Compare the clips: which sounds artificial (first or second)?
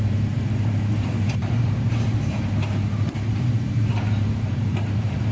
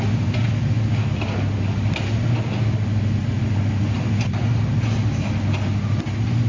first